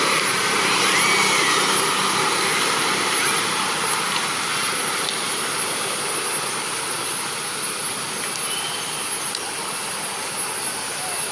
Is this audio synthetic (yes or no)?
no